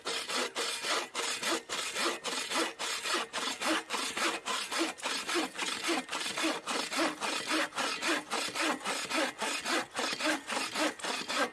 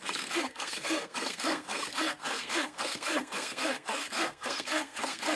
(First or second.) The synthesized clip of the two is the second